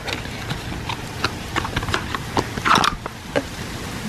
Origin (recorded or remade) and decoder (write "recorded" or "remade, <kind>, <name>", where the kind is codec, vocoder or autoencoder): recorded